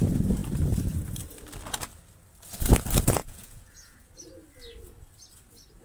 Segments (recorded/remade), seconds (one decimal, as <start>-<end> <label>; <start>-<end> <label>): 0.0-3.2 recorded; 3.2-4.1 remade; 4.1-5.8 recorded